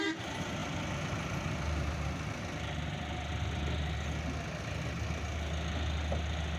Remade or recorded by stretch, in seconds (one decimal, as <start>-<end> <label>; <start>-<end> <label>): 0.0-6.6 recorded